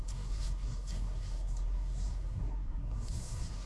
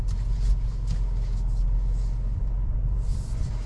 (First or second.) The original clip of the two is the second